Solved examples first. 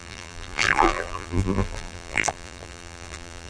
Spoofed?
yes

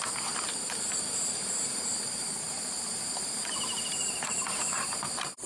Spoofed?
yes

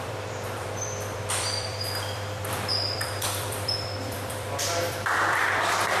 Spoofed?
yes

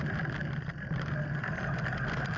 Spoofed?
no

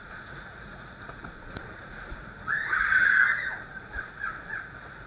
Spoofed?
yes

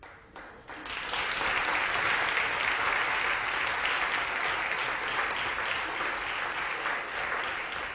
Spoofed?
no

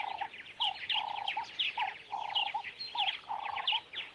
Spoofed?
no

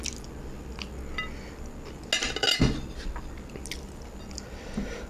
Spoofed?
no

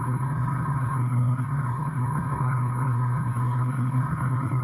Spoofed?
yes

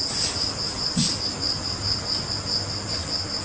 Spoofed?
no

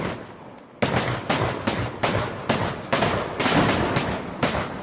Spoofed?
no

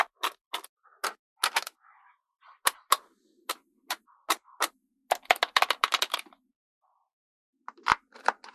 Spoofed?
no